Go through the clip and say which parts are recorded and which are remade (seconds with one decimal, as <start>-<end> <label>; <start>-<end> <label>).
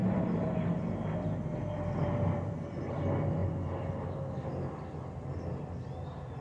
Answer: 0.0-6.4 recorded